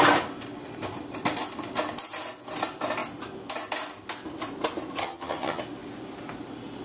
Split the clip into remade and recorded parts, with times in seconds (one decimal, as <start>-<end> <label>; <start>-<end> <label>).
0.0-5.0 recorded; 5.0-5.6 remade; 5.6-6.8 recorded